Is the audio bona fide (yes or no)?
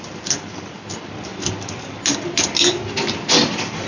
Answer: yes